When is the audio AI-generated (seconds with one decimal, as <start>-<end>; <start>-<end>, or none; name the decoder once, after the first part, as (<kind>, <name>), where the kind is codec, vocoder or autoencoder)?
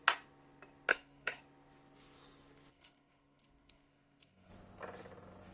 0.9-1.4 (codec, SNAC); 2.7-4.5